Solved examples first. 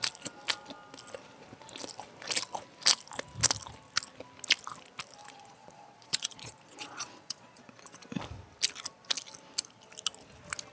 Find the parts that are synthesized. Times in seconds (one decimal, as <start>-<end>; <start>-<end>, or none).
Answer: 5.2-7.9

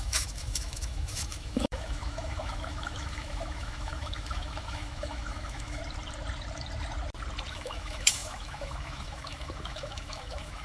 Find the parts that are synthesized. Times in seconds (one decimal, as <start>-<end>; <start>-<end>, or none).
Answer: 0.0-5.8; 7.5-10.6

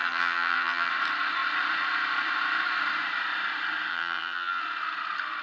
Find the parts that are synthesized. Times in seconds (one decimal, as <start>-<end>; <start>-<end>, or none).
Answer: 0.0-0.9; 3.9-4.6

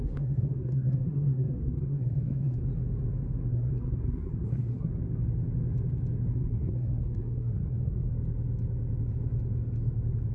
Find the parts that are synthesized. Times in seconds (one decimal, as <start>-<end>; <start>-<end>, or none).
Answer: 0.0-2.6; 3.5-4.9; 6.3-8.1

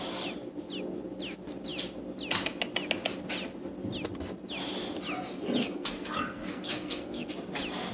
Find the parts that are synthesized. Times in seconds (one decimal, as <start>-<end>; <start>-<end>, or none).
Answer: 5.6-7.3

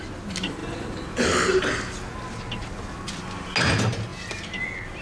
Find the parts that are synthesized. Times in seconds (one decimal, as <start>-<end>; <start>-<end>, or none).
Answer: none

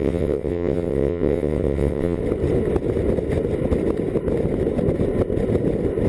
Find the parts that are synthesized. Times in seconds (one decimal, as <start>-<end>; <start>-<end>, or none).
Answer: 0.0-2.2

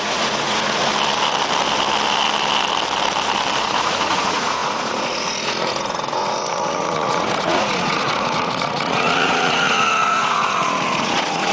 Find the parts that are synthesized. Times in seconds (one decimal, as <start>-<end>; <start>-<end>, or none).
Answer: 0.0-0.9; 3.6-11.5